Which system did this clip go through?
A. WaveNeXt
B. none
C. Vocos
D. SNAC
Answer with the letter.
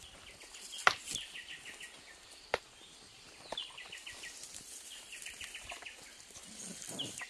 B